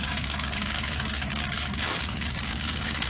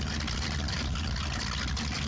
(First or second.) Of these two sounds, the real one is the second